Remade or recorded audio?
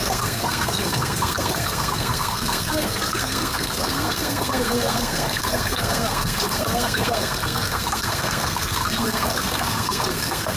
remade